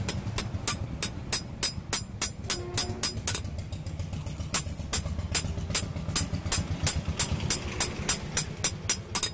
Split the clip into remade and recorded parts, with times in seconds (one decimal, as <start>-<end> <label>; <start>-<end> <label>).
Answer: 0.0-9.3 recorded